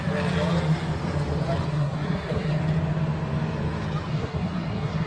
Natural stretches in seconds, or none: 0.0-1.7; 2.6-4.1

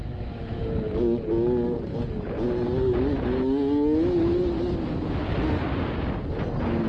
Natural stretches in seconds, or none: 0.7-6.9

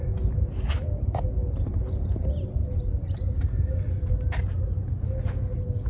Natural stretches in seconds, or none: 0.0-5.9

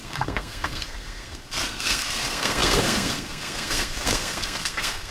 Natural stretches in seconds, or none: none

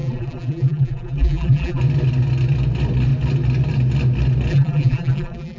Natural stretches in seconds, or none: 1.8-4.5